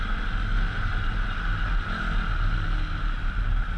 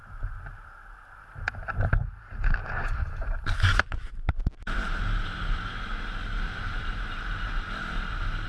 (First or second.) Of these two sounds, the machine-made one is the second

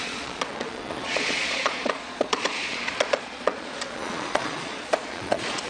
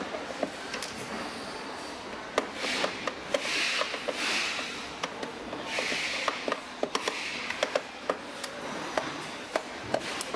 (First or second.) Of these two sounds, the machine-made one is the first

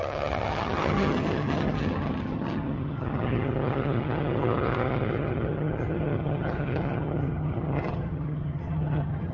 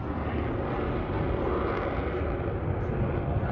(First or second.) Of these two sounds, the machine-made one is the first